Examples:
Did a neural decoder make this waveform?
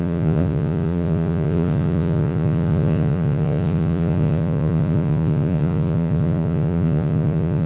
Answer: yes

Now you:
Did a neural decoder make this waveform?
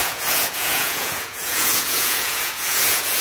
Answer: yes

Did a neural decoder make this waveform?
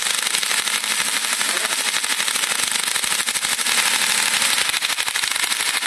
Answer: no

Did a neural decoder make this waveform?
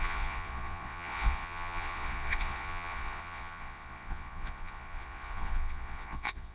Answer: yes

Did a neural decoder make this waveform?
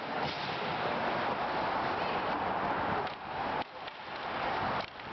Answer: no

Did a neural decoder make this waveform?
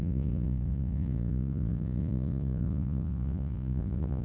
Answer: yes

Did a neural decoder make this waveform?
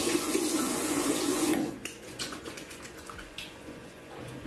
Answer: yes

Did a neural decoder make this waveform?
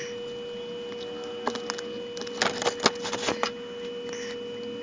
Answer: no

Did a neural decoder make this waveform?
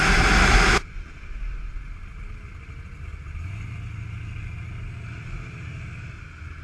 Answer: no